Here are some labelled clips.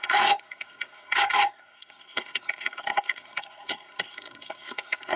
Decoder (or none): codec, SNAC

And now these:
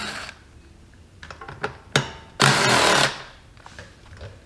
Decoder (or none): none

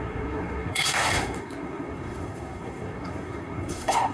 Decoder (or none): codec, SNAC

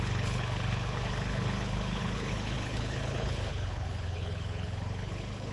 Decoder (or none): codec, HILCodec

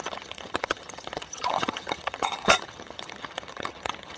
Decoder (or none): vocoder, HiFi-GAN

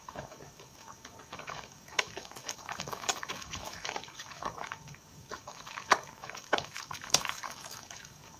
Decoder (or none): codec, DAC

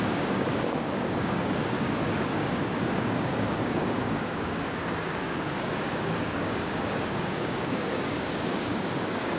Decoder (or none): codec, DAC